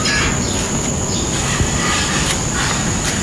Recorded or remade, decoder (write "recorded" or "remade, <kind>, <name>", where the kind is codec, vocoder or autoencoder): recorded